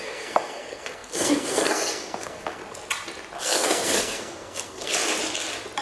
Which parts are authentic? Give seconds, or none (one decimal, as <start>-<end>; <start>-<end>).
2.6-3.4; 5.0-5.8